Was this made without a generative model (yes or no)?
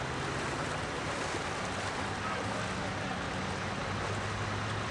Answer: yes